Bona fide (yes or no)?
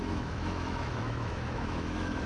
no